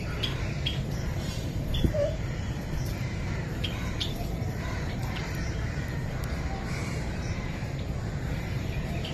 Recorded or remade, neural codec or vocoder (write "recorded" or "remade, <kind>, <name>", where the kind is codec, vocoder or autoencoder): remade, vocoder, BigVGAN v2